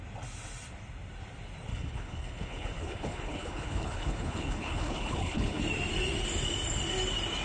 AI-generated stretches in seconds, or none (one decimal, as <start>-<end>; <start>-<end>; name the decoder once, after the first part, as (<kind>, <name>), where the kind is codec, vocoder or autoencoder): 1.7-5.6 (codec, HILCodec)